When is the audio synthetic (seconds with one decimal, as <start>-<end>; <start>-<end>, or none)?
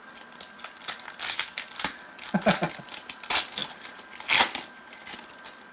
none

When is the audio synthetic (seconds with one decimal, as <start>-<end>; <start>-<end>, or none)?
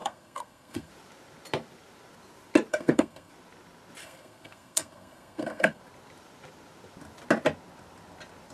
0.0-0.9; 2.7-3.3; 4.0-5.8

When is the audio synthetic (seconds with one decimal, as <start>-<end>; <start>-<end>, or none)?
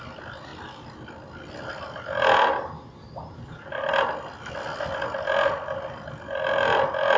none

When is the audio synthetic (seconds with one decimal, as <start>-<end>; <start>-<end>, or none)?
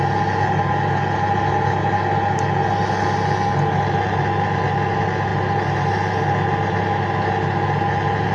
none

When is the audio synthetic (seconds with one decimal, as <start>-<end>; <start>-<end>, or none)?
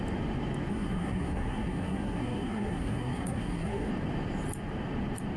0.7-3.9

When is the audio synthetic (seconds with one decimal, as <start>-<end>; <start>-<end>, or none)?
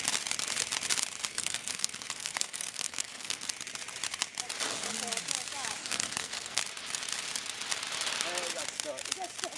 1.3-3.5; 5.8-6.6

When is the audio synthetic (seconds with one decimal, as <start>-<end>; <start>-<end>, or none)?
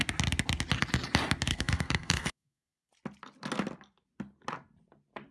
1.5-2.9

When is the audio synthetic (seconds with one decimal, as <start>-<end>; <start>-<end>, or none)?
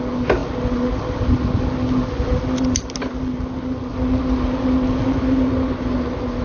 none